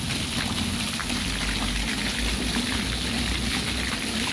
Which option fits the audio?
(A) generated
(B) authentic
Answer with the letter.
B